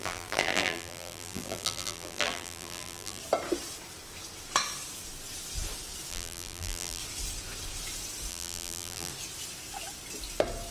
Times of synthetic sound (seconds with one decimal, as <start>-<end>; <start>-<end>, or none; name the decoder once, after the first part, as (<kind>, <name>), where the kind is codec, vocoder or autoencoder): 0.0-3.2 (vocoder, BigVGAN v2); 6.1-7.0; 8.3-9.1